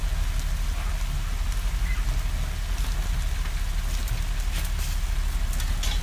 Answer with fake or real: real